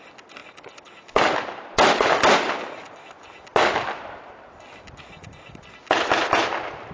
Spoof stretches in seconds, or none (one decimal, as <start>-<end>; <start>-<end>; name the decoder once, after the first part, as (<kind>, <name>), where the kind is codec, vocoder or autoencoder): none